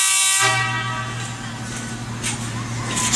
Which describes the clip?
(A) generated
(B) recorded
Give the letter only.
B